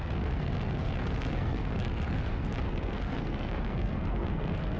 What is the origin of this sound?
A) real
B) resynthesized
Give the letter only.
B